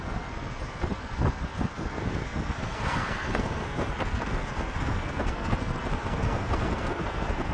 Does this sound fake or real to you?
fake